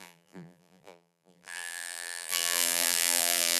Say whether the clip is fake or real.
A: fake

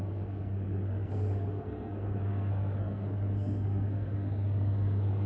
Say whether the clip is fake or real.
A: fake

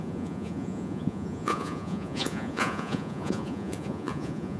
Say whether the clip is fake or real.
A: fake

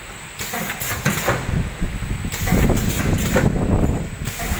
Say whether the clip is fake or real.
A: real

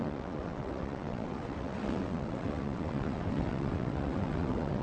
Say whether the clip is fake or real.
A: fake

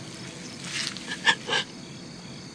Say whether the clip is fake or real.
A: real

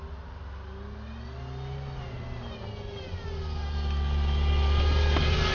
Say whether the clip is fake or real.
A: real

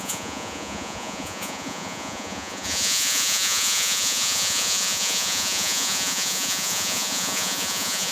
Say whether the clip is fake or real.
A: fake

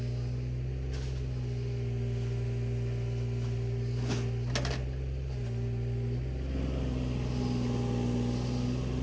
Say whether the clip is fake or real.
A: real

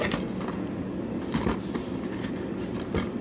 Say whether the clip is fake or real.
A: fake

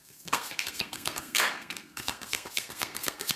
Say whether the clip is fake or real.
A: fake